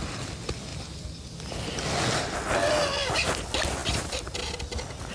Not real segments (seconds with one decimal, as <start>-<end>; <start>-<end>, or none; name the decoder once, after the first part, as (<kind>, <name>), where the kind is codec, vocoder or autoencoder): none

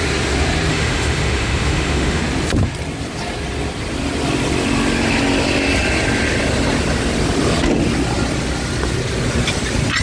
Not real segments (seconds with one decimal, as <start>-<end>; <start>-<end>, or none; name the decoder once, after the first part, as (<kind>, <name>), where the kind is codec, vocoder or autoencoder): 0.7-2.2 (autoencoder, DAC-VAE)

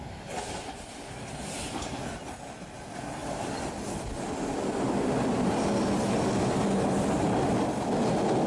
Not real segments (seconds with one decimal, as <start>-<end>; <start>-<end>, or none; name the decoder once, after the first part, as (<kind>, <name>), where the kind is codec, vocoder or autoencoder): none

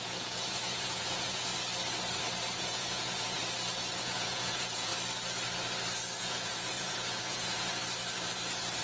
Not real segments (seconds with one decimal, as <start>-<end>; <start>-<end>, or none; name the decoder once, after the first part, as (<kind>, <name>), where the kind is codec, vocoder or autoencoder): 0.0-1.5 (vocoder, Vocos); 2.6-3.4; 4.0-4.9; 6.2-7.8

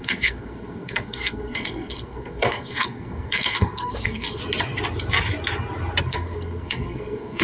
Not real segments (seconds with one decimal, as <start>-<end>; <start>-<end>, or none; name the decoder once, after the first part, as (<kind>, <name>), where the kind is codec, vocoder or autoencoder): 0.0-4.4 (codec, SNAC); 6.0-7.4